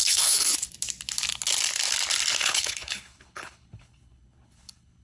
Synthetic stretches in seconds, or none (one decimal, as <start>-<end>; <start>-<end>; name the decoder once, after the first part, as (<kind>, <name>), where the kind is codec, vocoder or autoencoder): 0.0-0.5 (codec, HILCodec); 2.4-5.0

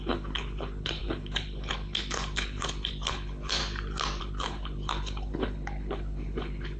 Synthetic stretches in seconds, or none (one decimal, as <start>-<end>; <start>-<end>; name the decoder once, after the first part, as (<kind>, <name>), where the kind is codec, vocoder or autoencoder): 0.0-3.6 (codec, HILCodec); 4.2-6.8